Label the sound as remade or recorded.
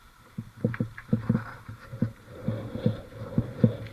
recorded